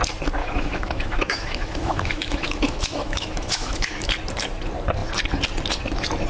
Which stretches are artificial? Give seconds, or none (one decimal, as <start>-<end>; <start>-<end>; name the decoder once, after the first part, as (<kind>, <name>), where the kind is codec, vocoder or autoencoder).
0.4-4.1 (autoencoder, DAC-VAE)